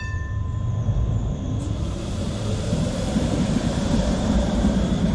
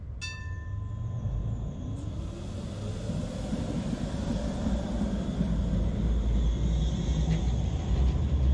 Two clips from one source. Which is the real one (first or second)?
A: second